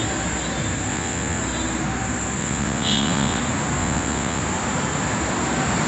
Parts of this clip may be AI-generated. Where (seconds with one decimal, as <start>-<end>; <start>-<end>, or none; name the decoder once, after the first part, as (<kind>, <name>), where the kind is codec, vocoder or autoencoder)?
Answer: 0.9-1.4 (vocoder, WaveNeXt); 2.4-3.4; 3.8-4.4